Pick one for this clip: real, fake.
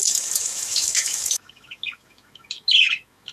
fake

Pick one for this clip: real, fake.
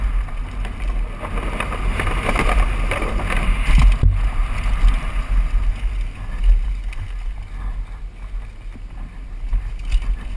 real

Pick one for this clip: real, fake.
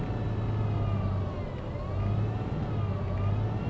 real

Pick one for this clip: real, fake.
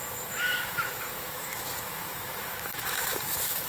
fake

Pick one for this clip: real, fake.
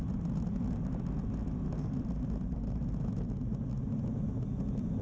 real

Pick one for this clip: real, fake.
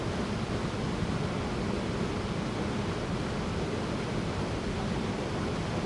real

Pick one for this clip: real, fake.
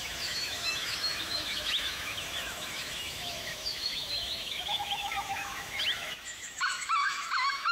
fake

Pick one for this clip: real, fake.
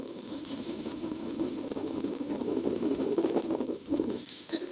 fake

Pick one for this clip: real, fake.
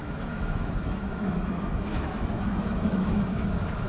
fake